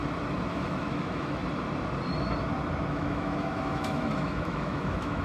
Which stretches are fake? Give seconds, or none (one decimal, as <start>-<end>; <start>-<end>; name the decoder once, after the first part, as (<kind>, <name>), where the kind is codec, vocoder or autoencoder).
0.5-1.4 (autoencoder, DAC-VAE); 2.9-5.2